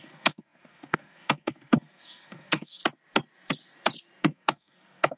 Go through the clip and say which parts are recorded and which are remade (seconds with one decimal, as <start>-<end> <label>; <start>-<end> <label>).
0.0-2.8 remade; 2.8-4.2 recorded; 4.2-5.2 remade